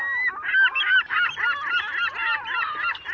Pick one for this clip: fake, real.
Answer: real